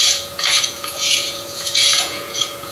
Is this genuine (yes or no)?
no